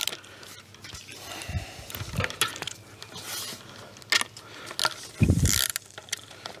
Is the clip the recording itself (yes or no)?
yes